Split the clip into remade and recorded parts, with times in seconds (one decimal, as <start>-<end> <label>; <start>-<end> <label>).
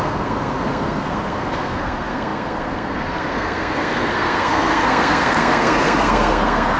0.0-6.8 remade